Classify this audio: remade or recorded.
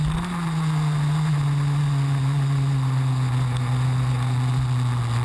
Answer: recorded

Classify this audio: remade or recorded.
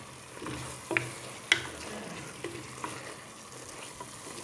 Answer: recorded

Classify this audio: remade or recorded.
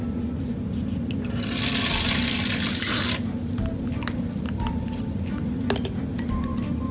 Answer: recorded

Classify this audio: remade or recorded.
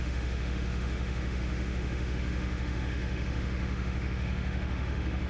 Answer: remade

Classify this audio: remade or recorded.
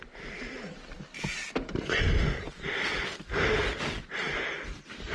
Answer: recorded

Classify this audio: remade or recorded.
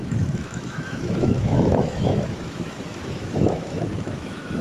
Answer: remade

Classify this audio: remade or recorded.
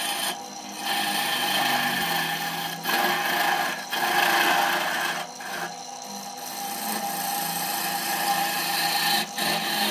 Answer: recorded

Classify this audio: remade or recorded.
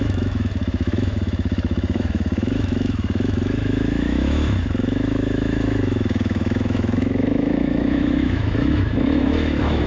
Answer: remade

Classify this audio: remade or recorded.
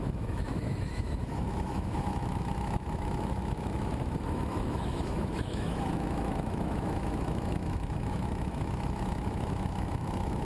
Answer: remade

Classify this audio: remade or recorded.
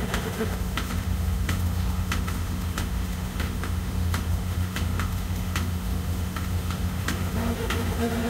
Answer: remade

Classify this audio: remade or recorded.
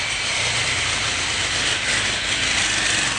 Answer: recorded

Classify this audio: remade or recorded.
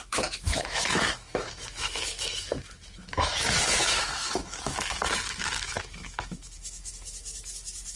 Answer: remade